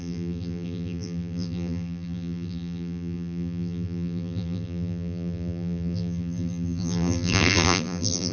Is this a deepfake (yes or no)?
yes